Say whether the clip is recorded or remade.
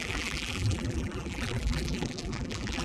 remade